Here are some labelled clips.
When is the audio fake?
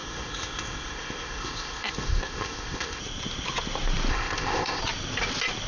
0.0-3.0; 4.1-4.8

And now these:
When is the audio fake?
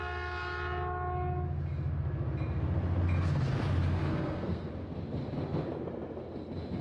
4.0-4.7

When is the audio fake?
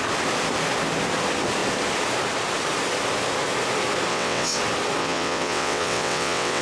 4.1-4.6; 5.0-6.6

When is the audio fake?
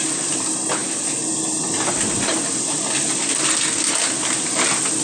none